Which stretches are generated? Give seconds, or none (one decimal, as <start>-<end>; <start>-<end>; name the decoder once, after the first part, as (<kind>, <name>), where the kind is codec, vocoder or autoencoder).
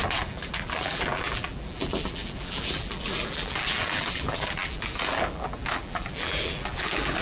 0.0-7.2 (vocoder, BigVGAN v2)